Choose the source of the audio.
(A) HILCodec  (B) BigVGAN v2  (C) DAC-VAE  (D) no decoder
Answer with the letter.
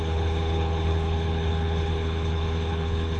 A